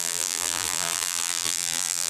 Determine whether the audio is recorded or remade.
remade